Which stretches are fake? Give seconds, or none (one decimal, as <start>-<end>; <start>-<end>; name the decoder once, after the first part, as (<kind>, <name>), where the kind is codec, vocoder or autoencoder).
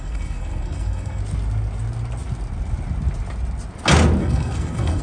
0.0-1.2 (codec, SNAC); 4.2-5.0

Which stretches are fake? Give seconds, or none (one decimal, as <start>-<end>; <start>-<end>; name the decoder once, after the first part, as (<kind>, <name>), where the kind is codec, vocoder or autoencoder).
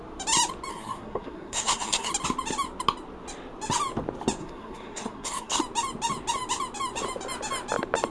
0.7-2.1 (codec, SNAC); 4.4-5.6